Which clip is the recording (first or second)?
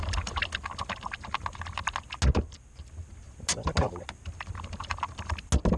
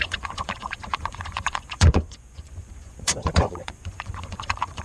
first